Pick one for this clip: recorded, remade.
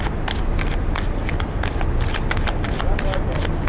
recorded